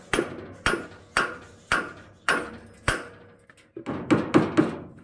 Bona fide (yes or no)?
yes